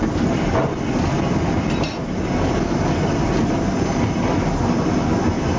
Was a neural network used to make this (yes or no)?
no